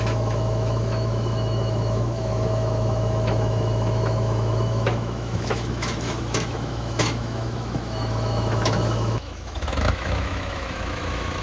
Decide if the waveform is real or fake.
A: fake